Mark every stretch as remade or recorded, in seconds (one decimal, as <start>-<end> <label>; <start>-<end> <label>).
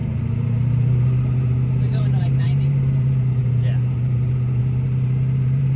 0.0-5.8 remade